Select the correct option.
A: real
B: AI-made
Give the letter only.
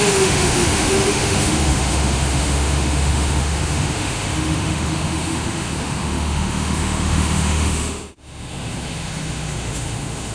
B